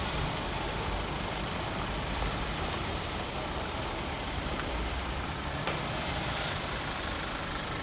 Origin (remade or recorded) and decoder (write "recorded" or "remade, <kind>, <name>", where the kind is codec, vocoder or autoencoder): remade, vocoder, BigVGAN v2